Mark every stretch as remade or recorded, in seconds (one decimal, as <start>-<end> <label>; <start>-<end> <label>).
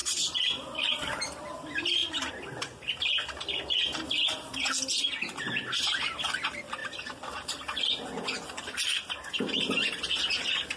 0.0-10.8 recorded